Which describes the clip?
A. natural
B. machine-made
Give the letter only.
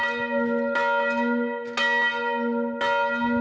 A